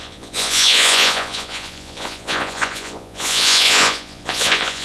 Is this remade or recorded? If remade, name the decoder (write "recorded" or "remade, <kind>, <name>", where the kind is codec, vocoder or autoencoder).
remade, vocoder, Vocos